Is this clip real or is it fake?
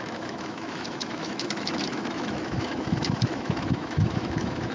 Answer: fake